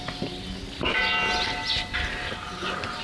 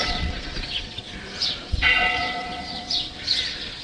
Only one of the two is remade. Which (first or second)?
second